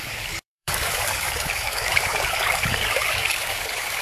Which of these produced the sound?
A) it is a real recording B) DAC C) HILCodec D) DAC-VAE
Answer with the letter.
B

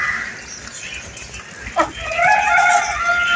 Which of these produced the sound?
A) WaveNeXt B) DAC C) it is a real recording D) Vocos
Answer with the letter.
C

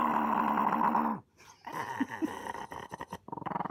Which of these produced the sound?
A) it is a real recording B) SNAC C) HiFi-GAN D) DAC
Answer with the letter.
A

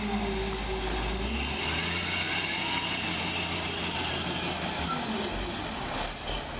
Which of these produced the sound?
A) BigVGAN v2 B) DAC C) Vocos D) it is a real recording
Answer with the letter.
D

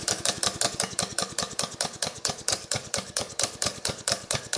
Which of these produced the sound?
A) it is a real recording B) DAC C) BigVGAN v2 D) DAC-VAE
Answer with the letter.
B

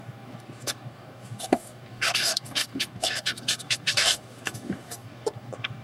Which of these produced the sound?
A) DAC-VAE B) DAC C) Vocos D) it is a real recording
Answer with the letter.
B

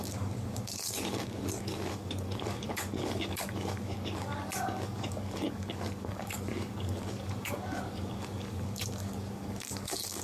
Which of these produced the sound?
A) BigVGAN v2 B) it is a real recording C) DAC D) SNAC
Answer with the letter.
C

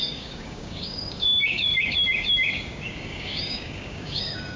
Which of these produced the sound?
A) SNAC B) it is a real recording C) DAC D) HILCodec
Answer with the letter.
C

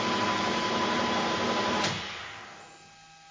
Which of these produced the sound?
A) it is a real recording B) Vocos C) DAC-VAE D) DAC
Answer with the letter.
A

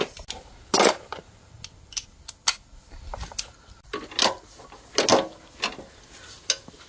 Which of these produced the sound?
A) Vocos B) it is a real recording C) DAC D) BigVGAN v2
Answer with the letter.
B